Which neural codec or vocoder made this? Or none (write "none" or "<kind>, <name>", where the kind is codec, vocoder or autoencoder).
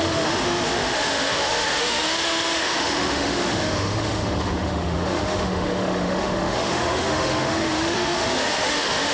autoencoder, DAC-VAE